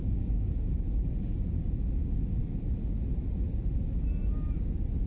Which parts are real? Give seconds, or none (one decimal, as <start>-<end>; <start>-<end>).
0.5-5.1